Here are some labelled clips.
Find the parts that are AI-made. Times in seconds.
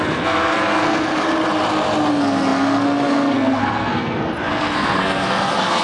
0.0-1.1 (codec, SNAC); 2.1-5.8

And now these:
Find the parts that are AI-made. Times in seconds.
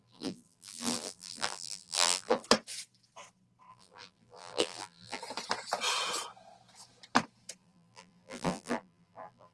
0.0-2.4 (vocoder, BigVGAN v2); 3.7-5.2; 7.6-9.5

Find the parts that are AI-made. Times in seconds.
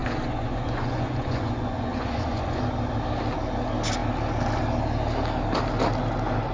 0.0-2.6 (vocoder, Vocos)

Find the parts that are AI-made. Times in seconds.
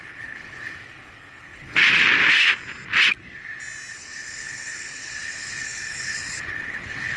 0.0-1.8 (codec, HILCodec); 3.9-7.2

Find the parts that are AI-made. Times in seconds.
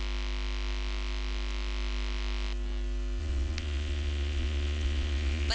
3.2-5.5 (vocoder, Vocos)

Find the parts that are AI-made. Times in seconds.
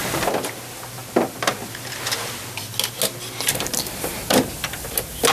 none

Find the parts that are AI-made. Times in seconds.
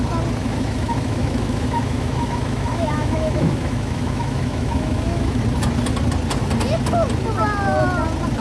0.4-5.4 (autoencoder, DAC-VAE)